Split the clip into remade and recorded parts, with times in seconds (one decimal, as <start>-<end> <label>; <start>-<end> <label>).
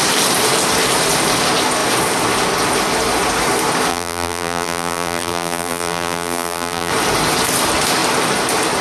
0.0-3.9 recorded; 3.9-6.9 remade; 6.9-8.8 recorded